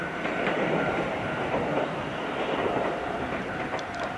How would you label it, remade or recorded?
remade